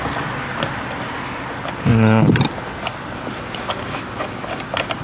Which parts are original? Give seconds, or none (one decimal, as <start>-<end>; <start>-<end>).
1.9-3.2